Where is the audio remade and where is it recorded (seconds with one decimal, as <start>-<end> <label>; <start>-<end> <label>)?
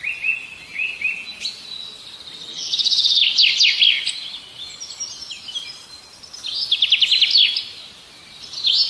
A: 0.0-2.5 recorded; 2.5-3.2 remade; 3.2-8.9 recorded